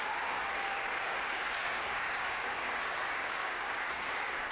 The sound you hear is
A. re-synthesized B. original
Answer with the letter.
A